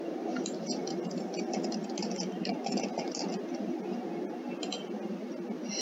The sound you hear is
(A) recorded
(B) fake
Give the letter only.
A